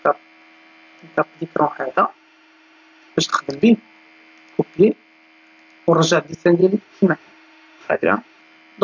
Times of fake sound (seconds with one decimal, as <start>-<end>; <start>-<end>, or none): 1.9-3.1; 6.6-8.4